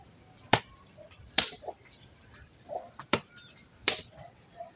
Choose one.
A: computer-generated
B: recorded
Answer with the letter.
A